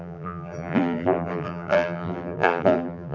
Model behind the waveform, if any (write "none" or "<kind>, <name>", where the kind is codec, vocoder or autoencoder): vocoder, BigVGAN v2